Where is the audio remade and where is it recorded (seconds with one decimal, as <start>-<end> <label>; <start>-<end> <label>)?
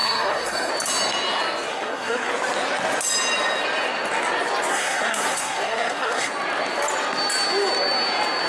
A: 0.0-0.7 remade; 0.7-1.7 recorded; 1.7-2.3 remade; 2.3-4.7 recorded; 4.7-6.3 remade; 6.3-8.5 recorded